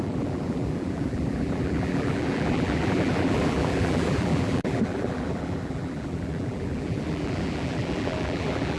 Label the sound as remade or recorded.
remade